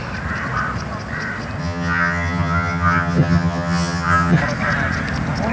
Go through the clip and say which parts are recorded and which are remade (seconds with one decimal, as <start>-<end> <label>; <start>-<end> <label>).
0.0-1.6 recorded; 1.6-4.4 remade; 4.4-5.5 recorded